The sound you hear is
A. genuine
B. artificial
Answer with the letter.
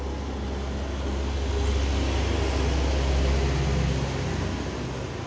A